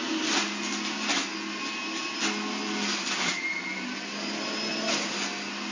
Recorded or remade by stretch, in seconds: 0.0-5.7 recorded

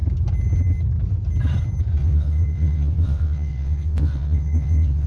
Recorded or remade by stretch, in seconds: 0.0-2.0 recorded; 2.0-5.1 remade

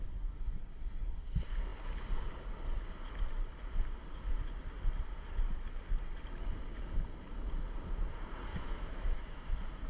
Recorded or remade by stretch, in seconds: 0.0-8.5 recorded; 8.5-9.5 remade; 9.5-9.9 recorded

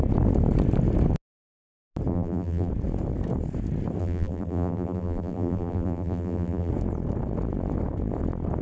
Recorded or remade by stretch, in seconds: 0.0-2.1 recorded; 2.1-2.7 remade; 2.7-4.0 recorded; 4.0-6.7 remade; 6.7-8.6 recorded